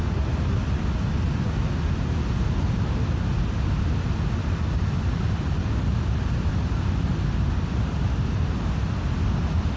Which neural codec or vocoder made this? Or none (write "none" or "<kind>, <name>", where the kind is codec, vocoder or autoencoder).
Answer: none